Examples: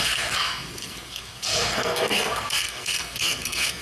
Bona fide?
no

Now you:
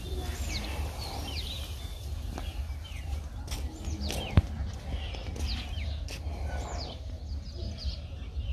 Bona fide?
yes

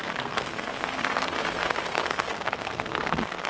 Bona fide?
no